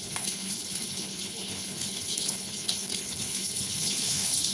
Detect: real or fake fake